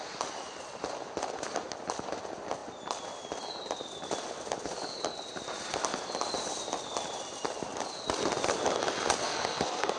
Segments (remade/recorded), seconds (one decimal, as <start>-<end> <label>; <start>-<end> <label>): 0.0-9.2 recorded; 9.2-10.0 remade